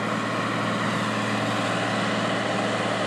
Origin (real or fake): real